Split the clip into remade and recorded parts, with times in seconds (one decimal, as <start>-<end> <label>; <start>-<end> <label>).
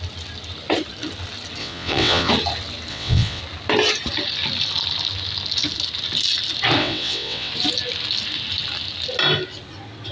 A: 0.0-1.6 recorded; 1.6-2.3 remade; 2.3-2.9 recorded; 2.9-3.4 remade; 3.4-6.8 recorded; 6.8-7.5 remade; 7.5-10.1 recorded